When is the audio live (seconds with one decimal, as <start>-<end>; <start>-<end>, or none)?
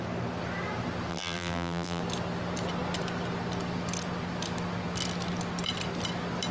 0.0-1.1; 2.0-6.5